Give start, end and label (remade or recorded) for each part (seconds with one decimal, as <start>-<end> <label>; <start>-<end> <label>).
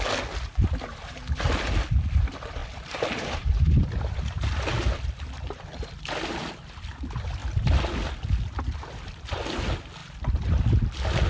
0.0-2.6 recorded; 2.6-5.9 remade; 5.9-7.4 recorded; 7.4-7.9 remade; 7.9-11.3 recorded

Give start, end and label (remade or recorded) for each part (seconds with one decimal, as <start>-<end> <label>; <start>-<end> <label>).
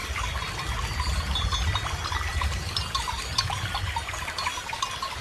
0.0-5.2 recorded